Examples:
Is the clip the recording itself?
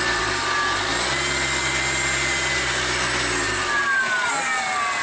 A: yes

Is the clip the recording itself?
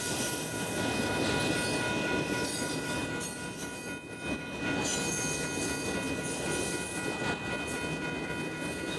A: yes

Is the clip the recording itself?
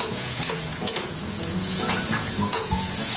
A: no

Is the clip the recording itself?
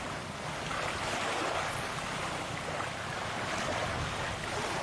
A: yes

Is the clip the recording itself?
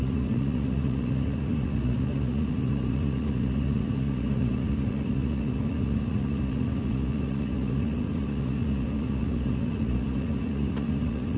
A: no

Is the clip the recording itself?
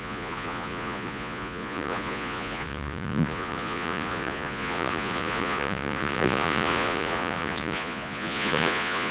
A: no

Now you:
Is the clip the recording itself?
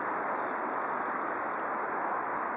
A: yes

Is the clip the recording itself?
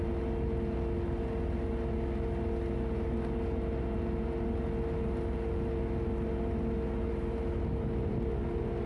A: yes